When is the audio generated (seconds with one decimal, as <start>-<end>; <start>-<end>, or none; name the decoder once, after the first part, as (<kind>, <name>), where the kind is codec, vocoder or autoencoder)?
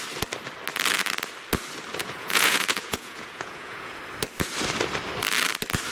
2.0-4.0 (vocoder, Vocos)